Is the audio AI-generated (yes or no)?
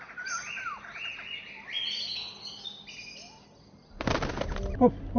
no